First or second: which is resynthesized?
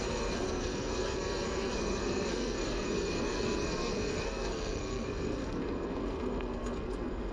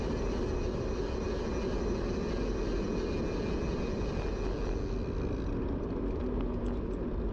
first